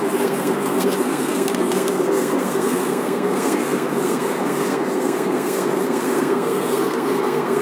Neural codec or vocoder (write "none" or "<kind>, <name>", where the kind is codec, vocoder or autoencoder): codec, SNAC